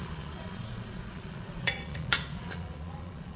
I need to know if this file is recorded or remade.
remade